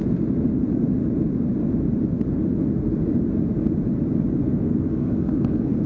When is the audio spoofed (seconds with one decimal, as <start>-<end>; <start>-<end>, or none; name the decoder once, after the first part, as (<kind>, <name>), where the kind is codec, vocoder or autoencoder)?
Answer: 4.4-5.9 (codec, SNAC)